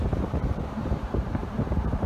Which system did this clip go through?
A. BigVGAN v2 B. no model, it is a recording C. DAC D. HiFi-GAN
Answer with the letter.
A